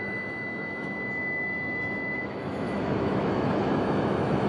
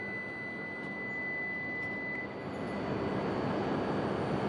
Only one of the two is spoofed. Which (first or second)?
first